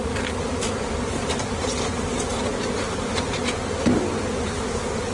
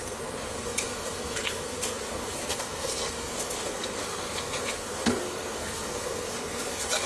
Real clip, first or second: first